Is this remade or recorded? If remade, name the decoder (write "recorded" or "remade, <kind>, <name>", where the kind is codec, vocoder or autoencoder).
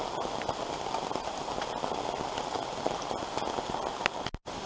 recorded